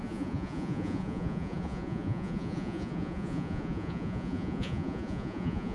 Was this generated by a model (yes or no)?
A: yes